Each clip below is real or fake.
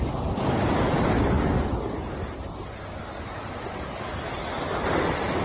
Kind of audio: real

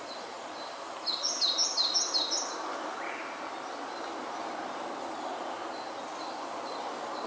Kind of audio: real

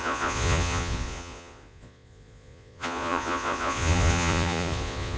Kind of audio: fake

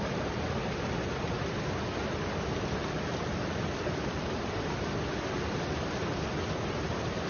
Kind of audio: real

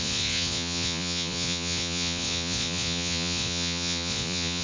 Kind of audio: fake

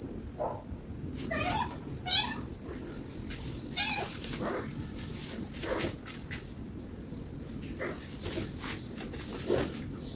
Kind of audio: real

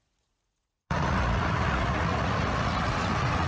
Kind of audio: fake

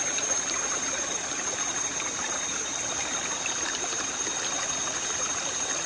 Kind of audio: real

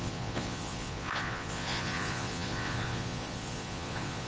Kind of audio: fake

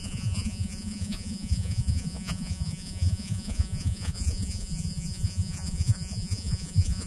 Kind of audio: fake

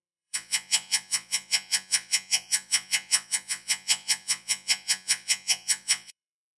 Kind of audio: fake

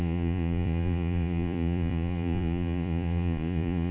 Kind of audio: fake